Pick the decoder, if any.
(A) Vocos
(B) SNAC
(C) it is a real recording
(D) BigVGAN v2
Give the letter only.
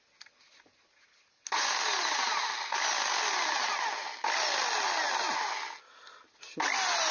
C